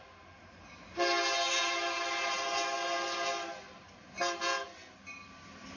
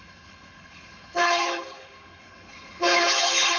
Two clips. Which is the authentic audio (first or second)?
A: first